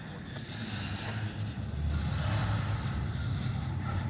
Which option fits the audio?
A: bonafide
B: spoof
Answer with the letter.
A